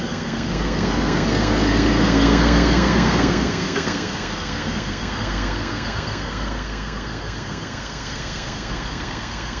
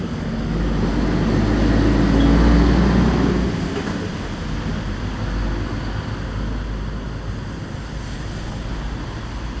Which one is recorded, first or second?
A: second